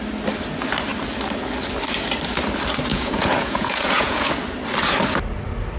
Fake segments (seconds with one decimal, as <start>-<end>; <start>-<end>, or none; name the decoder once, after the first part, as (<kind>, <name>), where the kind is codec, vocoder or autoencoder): 2.9-4.3 (vocoder, Vocos)